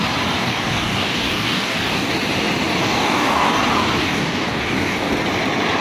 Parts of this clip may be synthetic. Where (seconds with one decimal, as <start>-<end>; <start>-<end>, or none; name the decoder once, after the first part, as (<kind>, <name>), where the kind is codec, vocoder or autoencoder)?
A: 0.4-2.1 (codec, DAC); 2.8-3.6; 4.0-5.1